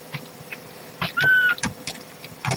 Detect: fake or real fake